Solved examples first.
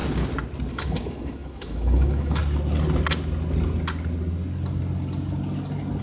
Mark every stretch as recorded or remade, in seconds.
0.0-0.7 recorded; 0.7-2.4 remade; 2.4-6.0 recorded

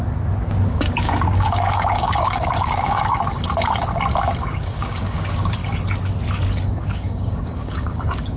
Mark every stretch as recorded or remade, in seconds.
0.0-0.7 recorded; 0.7-3.3 remade; 3.3-4.5 recorded; 4.5-5.6 remade; 5.6-6.9 recorded; 6.9-8.4 remade

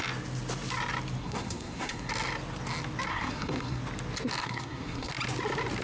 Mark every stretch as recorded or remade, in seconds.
0.0-1.2 recorded; 1.2-2.1 remade; 2.1-3.1 recorded; 3.1-3.8 remade; 3.8-4.4 recorded; 4.4-5.1 remade; 5.1-5.8 recorded

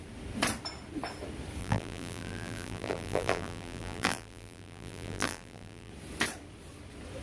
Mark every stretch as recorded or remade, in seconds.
0.0-1.6 recorded; 1.6-5.9 remade; 5.9-7.2 recorded

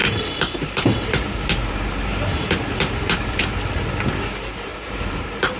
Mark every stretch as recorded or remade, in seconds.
0.0-3.4 remade; 3.4-4.7 recorded; 4.7-5.6 remade

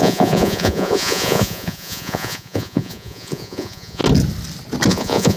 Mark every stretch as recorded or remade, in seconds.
0.0-4.0 remade; 4.0-4.9 recorded; 4.9-5.4 remade

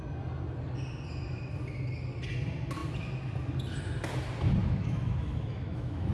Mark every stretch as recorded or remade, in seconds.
0.0-4.6 recorded; 4.6-6.1 remade

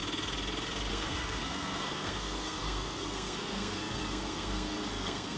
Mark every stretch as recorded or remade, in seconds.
0.0-0.9 recorded; 0.9-5.4 remade